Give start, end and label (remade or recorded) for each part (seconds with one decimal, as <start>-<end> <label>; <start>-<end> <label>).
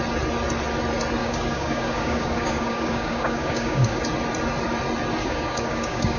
0.0-1.2 recorded; 1.2-4.0 remade; 4.0-5.2 recorded; 5.2-6.2 remade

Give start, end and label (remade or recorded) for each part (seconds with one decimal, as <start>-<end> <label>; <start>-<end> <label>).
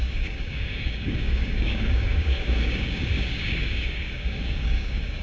0.0-5.2 remade